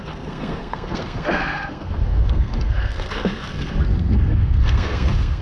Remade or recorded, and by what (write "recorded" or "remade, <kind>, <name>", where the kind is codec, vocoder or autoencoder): remade, codec, SNAC